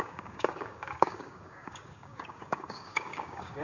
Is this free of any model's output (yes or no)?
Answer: no